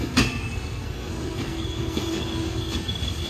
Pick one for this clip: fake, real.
fake